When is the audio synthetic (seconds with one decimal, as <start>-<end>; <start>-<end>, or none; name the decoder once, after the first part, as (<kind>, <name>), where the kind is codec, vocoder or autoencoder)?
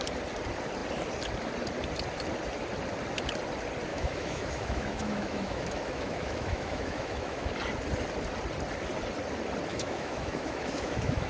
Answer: 3.9-7.5 (autoencoder, DAC-VAE); 9.7-11.3